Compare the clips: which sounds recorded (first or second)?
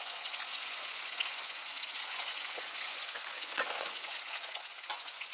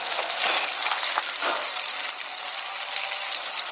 second